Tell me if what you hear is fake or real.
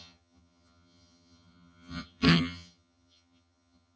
fake